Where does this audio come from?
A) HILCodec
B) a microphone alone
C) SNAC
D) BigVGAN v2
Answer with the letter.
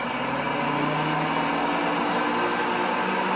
B